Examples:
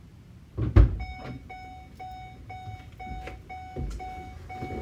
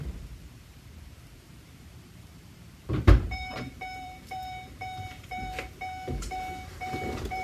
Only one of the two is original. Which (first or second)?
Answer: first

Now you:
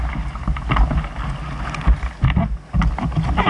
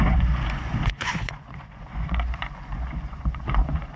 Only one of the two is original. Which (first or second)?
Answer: first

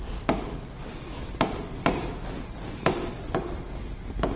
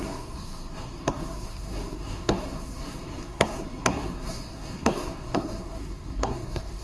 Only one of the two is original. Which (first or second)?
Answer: first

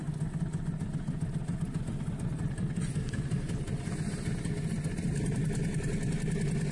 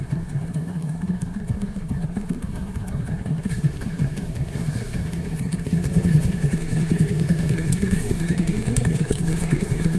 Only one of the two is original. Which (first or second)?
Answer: first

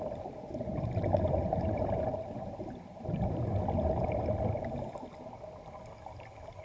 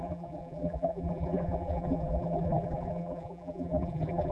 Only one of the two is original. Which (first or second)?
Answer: first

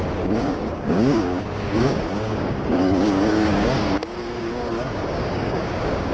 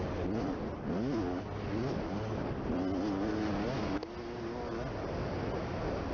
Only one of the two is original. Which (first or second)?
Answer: second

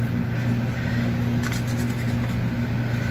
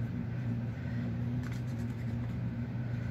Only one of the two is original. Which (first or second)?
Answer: first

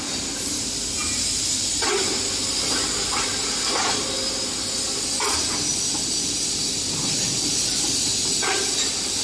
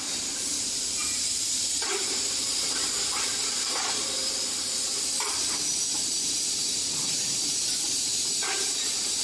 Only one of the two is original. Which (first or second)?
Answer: first